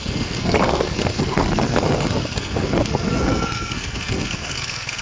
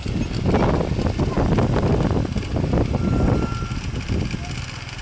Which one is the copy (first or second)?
first